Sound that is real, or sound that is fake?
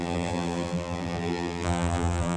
fake